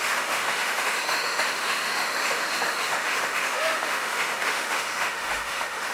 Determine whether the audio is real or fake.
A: fake